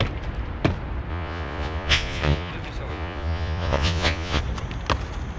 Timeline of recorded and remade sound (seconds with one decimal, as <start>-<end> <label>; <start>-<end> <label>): 0.0-1.1 recorded; 1.1-2.5 remade; 2.5-2.9 recorded; 2.9-4.4 remade; 4.4-5.4 recorded